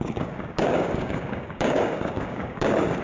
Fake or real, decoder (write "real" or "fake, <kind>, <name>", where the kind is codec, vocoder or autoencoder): fake, codec, DAC